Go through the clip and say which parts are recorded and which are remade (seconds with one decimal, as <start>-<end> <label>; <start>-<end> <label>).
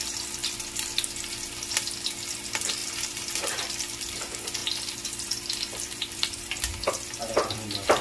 0.0-0.4 remade; 0.4-2.4 recorded; 2.4-8.0 remade